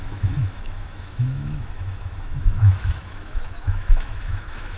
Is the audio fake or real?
fake